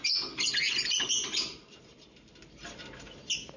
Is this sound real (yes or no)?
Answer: yes